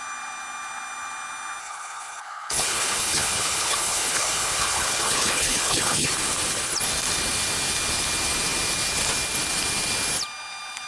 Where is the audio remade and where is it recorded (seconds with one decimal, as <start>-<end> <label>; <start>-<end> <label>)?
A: 0.0-1.6 recorded; 1.6-6.1 remade; 6.1-10.9 recorded